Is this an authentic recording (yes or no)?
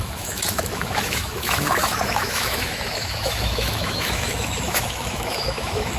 no